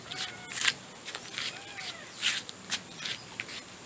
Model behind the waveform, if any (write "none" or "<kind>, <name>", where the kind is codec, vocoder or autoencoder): none